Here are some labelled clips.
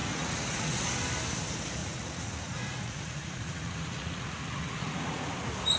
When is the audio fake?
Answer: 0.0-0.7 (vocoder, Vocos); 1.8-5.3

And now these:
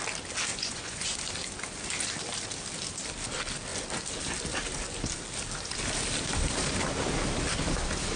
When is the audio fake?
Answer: 0.5-1.2 (vocoder, Vocos)

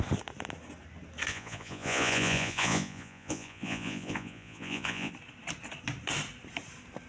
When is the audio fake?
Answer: 1.3-5.1 (vocoder, Vocos)

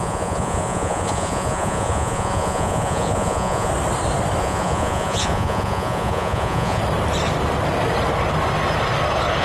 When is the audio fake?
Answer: 0.0-3.7 (vocoder, Vocos); 4.4-6.8

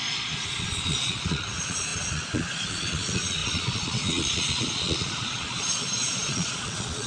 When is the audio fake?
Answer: 0.0-7.1 (vocoder, Vocos)

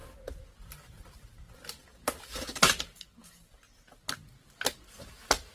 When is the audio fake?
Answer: none